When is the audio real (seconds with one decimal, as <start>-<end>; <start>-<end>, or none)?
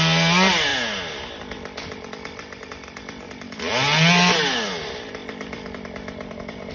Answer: 0.0-6.7